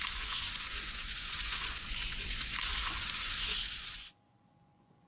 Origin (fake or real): fake